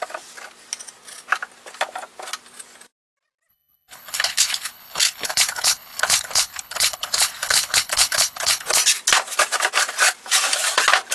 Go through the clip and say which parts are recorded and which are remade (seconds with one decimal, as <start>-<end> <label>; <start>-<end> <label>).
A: 0.0-3.5 recorded; 3.5-8.7 remade; 8.7-11.1 recorded